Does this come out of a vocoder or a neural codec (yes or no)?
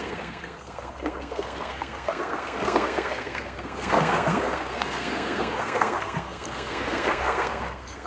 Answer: yes